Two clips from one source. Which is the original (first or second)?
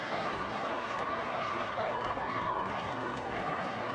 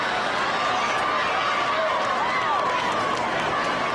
second